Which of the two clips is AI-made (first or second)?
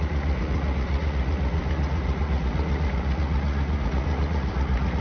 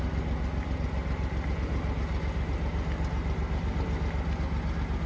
first